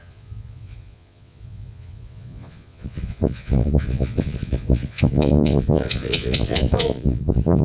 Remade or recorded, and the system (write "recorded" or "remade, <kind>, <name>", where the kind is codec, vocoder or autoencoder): remade, vocoder, Vocos